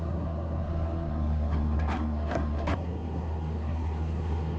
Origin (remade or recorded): remade